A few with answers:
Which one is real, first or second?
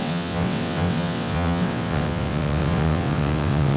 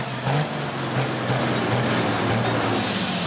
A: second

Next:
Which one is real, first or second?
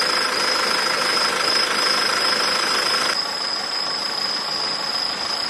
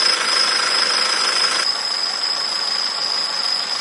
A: first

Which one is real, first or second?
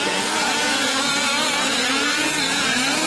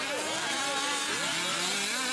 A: second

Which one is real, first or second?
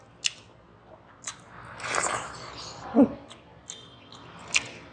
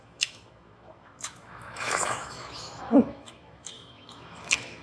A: first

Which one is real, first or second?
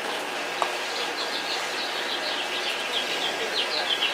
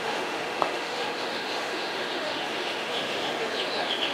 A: first